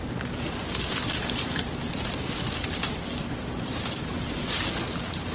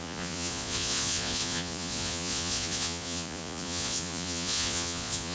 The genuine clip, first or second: first